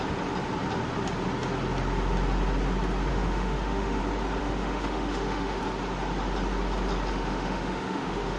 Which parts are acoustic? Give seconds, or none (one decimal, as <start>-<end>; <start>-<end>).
0.0-3.1; 4.0-4.4; 5.6-7.1